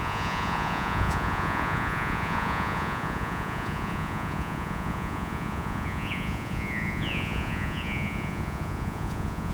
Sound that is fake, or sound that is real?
fake